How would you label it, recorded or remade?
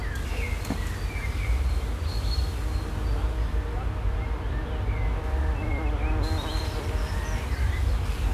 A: recorded